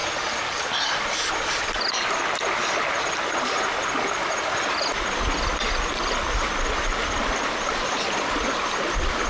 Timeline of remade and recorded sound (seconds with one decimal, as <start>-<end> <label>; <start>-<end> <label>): 0.0-9.3 recorded